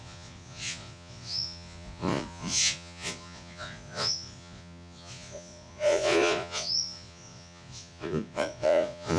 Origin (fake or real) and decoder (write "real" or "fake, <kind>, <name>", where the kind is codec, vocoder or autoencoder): fake, vocoder, Vocos